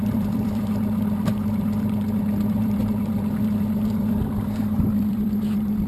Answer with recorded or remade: remade